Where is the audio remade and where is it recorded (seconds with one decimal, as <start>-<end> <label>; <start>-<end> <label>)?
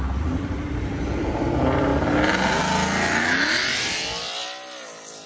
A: 0.0-5.3 recorded